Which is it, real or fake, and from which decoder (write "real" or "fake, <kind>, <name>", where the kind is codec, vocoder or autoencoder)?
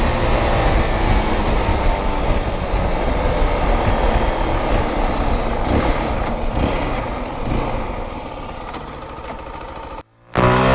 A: real